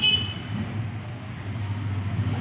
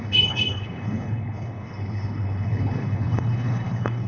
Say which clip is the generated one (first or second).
second